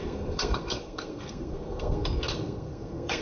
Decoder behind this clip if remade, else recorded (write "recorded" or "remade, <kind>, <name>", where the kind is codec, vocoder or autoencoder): remade, codec, SNAC